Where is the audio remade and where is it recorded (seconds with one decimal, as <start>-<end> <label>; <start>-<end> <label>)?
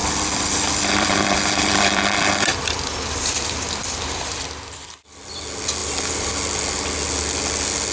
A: 0.0-4.3 remade; 4.3-5.8 recorded; 5.8-6.3 remade; 6.3-7.9 recorded